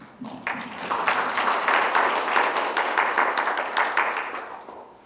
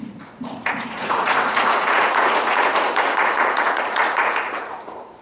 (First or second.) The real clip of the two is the first